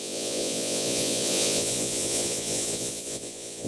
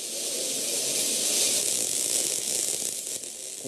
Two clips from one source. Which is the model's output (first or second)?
first